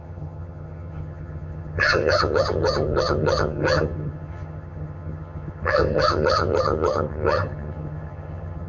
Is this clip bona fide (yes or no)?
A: no